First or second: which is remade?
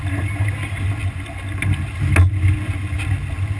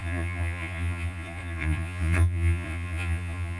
second